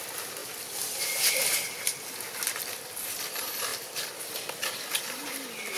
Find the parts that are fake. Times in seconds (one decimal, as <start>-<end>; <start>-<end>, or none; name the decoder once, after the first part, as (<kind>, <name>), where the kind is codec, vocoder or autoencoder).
none

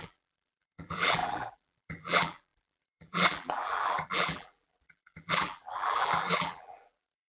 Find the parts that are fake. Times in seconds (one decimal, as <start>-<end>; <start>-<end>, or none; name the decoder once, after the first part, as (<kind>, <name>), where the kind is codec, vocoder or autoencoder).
0.0-7.3 (vocoder, BigVGAN v2)